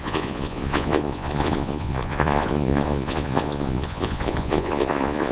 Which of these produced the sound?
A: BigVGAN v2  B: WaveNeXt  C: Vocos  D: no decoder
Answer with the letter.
C